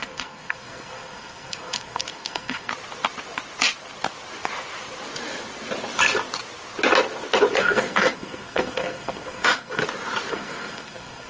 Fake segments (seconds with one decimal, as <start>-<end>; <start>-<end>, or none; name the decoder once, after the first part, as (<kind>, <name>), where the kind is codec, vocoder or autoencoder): 0.0-2.7 (codec, SNAC); 7.6-9.8; 10.3-11.3